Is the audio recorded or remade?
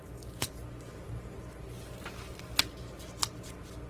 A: recorded